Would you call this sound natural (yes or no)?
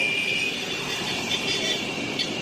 no